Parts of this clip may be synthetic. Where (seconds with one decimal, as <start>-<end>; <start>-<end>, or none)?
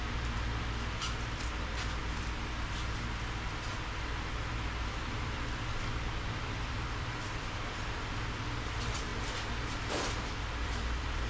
0.6-2.0; 4.5-9.1; 9.8-11.3